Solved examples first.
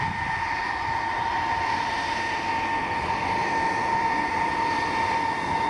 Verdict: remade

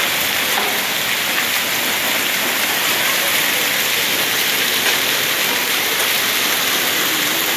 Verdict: recorded